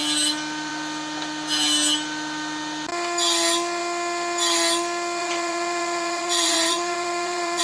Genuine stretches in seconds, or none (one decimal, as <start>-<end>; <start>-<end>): 0.0-5.2

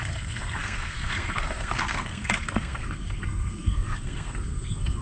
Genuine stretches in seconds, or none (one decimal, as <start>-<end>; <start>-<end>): none